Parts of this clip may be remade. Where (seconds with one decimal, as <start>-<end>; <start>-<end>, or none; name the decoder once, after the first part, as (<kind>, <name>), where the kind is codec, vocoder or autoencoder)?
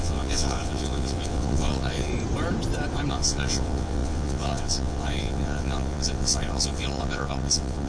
0.0-2.1 (vocoder, WaveNeXt); 3.1-7.9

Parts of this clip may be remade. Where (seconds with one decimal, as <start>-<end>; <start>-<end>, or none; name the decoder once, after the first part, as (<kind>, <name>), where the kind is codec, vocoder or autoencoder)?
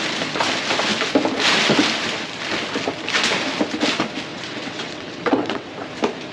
4.3-5.7 (vocoder, WaveNeXt)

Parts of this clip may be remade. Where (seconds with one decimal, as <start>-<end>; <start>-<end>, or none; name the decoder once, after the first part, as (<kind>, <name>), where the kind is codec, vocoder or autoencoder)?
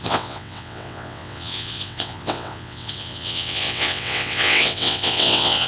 0.0-5.7 (vocoder, WaveNeXt)